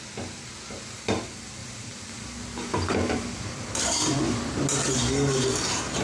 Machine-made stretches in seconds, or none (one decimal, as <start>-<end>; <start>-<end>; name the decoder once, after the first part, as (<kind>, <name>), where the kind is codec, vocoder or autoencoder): 1.6-4.6 (vocoder, BigVGAN v2)